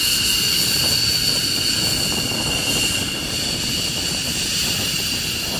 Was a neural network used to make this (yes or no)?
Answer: no